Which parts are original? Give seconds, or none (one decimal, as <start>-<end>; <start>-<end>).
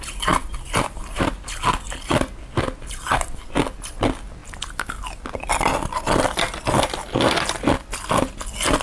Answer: 0.0-8.8